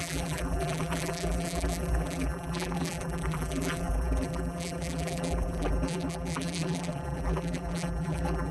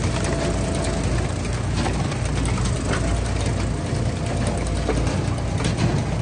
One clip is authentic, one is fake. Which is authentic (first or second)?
second